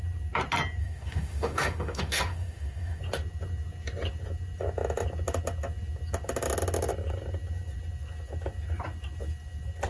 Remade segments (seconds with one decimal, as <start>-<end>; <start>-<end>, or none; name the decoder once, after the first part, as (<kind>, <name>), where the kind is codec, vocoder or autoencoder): 0.8-3.0 (autoencoder, DAC-VAE)